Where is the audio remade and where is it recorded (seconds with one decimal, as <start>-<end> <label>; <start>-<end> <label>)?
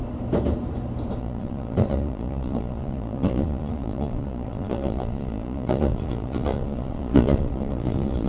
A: 0.0-1.2 recorded; 1.2-8.3 remade